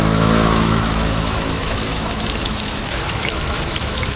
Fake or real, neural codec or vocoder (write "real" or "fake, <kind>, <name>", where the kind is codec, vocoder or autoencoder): fake, autoencoder, DAC-VAE